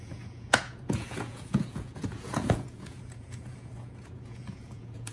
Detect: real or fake fake